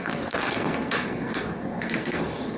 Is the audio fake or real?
fake